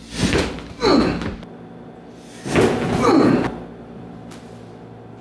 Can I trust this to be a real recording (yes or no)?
yes